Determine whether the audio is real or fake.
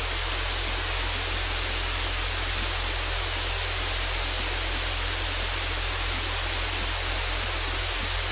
real